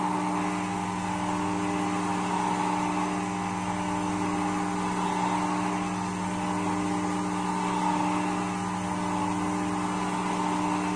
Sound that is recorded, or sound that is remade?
recorded